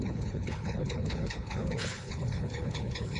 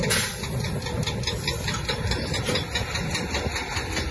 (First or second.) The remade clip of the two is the first